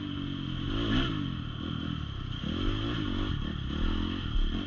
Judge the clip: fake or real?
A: real